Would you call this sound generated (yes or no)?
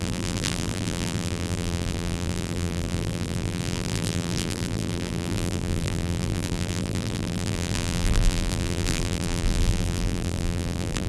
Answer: yes